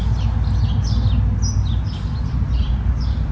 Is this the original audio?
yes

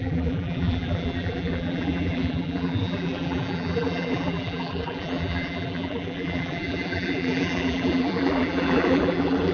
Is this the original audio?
no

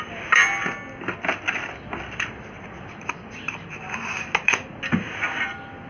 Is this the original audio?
yes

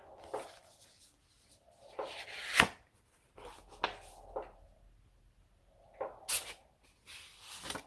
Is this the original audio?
yes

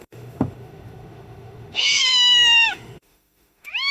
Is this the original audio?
no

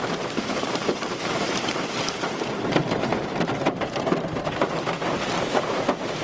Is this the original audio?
no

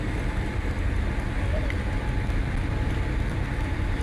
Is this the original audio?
yes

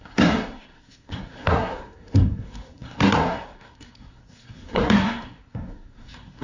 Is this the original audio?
no